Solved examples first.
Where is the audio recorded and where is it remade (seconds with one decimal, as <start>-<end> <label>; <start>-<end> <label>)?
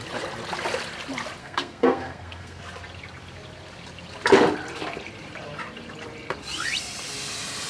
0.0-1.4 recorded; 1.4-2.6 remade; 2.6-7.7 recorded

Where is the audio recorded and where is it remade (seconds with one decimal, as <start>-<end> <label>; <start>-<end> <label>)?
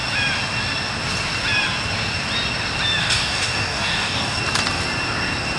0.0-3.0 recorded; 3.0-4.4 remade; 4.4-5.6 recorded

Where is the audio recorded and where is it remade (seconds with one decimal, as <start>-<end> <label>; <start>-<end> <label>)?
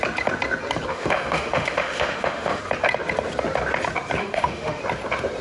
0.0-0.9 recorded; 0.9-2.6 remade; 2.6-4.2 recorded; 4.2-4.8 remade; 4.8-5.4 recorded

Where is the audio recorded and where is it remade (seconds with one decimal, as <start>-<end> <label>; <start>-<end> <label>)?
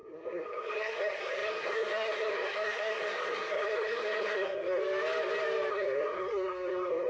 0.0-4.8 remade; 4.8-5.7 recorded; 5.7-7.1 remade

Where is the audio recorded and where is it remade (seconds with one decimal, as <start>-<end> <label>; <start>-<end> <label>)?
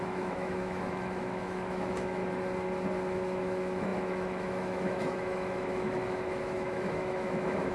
0.0-2.2 remade; 2.2-3.0 recorded; 3.0-7.7 remade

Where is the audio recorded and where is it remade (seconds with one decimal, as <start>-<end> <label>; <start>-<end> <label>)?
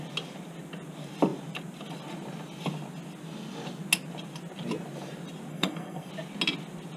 0.0-5.5 recorded; 5.5-6.1 remade; 6.1-7.0 recorded